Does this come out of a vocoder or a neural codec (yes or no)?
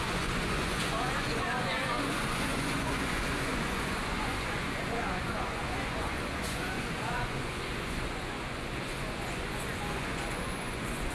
yes